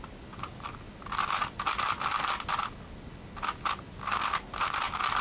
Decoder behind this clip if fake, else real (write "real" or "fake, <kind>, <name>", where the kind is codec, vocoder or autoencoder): real